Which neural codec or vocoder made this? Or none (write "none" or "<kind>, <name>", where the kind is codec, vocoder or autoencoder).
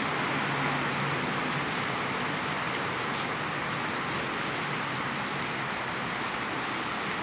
none